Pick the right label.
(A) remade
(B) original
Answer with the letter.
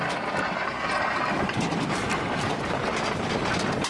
B